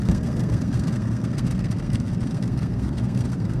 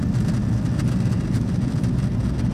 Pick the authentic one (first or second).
second